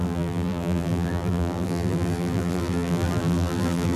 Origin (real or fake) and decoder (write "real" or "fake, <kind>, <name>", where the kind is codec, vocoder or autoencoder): fake, vocoder, BigVGAN v2